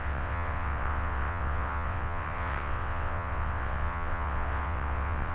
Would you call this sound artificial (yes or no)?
yes